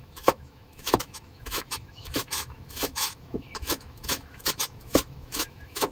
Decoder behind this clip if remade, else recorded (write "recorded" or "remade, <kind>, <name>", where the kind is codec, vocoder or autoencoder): remade, autoencoder, DAC-VAE